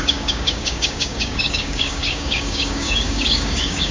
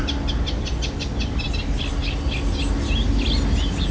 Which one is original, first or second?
second